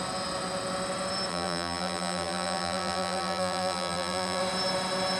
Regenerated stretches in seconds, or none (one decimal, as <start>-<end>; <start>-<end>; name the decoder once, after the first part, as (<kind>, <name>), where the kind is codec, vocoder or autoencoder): 1.3-4.4 (vocoder, BigVGAN v2)